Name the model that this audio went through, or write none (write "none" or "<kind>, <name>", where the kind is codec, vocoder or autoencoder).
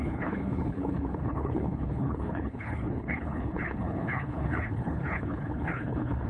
codec, HILCodec